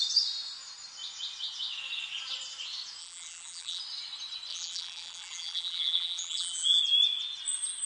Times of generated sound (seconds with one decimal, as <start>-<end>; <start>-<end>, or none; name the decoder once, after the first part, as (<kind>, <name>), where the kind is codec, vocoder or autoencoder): 3.0-3.8 (vocoder, BigVGAN v2); 4.5-6.8